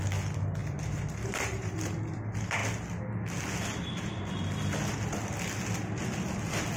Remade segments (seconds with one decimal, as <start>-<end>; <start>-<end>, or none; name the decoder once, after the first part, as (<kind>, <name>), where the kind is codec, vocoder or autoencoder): 0.6-1.9 (vocoder, BigVGAN v2)